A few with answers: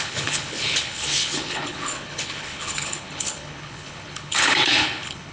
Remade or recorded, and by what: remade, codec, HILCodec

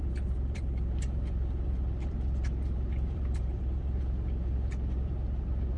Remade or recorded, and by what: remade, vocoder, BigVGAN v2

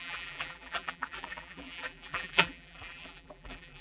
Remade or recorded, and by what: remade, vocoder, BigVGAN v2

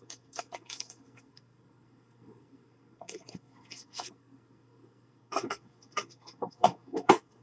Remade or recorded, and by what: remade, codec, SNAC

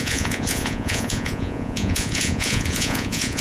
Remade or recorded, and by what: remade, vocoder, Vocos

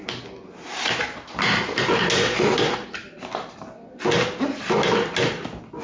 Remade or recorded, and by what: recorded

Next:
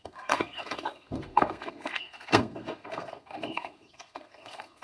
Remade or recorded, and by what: remade, codec, SNAC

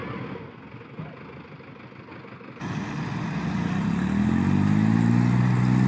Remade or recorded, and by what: recorded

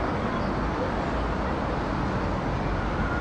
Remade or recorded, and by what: recorded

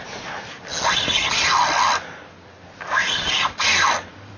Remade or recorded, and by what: recorded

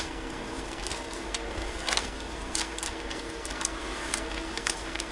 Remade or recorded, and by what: remade, codec, SNAC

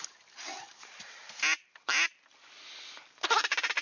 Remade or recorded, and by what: recorded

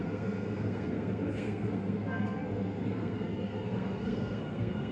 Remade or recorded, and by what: remade, codec, SNAC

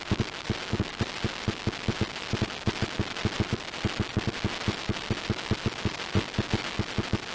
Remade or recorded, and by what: recorded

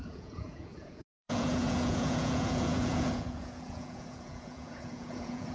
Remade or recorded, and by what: remade, vocoder, Vocos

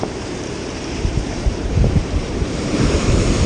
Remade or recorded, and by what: remade, vocoder, BigVGAN v2